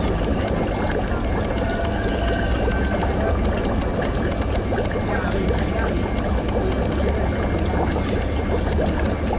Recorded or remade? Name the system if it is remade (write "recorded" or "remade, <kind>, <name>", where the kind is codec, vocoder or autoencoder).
recorded